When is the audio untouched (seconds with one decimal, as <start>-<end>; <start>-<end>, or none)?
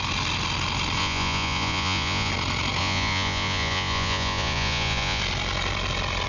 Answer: 0.0-1.0; 2.3-2.8; 5.2-6.3